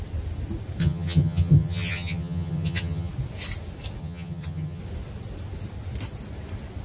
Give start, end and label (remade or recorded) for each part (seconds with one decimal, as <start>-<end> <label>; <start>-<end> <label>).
0.0-0.8 recorded; 0.8-3.1 remade; 3.1-4.0 recorded; 4.0-4.8 remade; 4.8-6.8 recorded